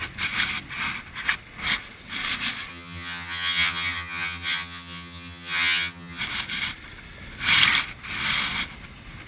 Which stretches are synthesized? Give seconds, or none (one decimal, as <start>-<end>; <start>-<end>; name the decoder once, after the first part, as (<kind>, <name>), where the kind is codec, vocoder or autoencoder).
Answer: 2.7-6.2 (vocoder, HiFi-GAN)